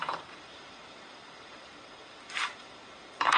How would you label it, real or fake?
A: fake